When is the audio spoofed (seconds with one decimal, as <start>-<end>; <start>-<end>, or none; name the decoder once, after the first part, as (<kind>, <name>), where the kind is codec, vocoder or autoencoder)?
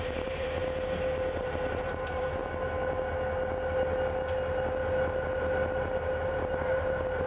0.0-0.6 (vocoder, BigVGAN v2); 1.4-2.4; 6.2-7.3